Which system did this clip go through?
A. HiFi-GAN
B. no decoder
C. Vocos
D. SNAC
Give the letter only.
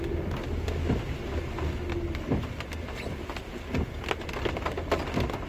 B